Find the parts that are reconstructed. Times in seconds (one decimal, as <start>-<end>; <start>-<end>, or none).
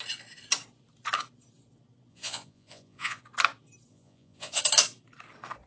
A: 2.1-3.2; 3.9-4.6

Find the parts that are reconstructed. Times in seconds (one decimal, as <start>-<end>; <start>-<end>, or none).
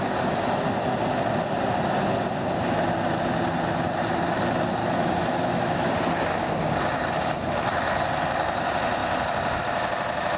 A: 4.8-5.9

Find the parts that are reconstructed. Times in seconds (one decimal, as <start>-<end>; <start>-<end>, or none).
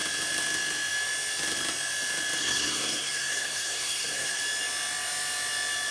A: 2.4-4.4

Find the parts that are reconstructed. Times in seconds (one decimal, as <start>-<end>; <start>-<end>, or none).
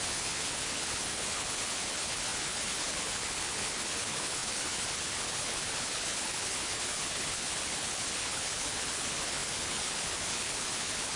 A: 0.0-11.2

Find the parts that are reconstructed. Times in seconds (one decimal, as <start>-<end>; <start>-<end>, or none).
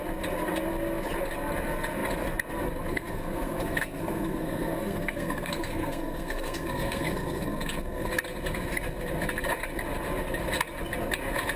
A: 2.9-8.1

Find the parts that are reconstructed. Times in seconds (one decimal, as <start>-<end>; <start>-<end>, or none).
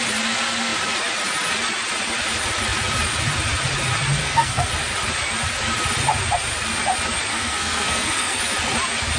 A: 4.2-4.7; 7.3-8.4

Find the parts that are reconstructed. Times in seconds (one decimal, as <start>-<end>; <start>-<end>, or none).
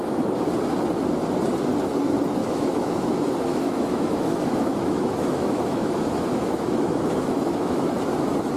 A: 2.4-3.1; 3.5-7.9